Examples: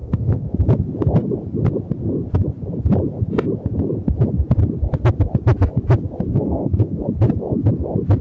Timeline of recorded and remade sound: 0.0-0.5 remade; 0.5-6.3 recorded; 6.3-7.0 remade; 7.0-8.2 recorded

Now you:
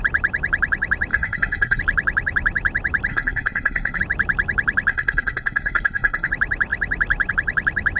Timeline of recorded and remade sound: 0.0-1.1 recorded; 1.1-1.8 remade; 1.8-3.1 recorded; 3.1-4.0 remade; 4.0-4.9 recorded; 4.9-6.3 remade; 6.3-8.0 recorded

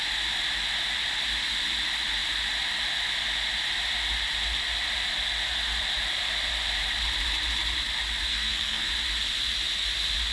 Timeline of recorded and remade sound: 0.0-8.3 recorded; 8.3-8.9 remade; 8.9-10.3 recorded

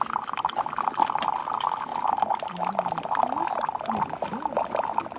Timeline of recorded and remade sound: 0.0-5.2 recorded

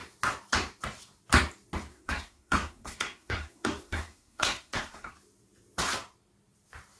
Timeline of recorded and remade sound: 0.0-1.9 recorded; 1.9-5.1 remade; 5.1-7.0 recorded

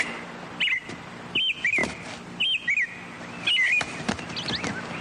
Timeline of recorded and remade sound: 0.0-5.0 recorded